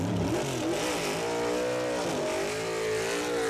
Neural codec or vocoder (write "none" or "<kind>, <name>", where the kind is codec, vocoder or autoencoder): none